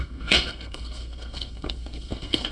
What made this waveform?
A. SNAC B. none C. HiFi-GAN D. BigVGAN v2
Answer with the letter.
A